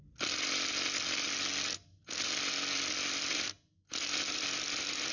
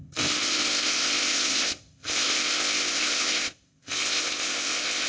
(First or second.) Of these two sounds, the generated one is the second